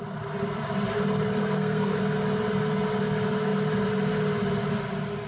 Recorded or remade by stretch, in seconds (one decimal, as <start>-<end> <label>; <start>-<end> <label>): 0.0-1.4 recorded; 1.4-2.0 remade; 2.0-5.3 recorded